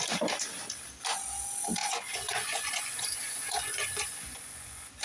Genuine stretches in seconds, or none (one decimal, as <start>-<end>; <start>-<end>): 0.0-1.8